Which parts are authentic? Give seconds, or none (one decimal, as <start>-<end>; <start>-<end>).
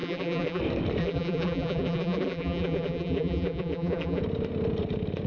0.6-1.0; 4.2-5.3